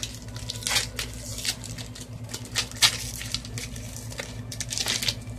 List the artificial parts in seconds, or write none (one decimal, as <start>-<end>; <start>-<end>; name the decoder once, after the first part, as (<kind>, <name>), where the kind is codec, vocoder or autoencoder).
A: none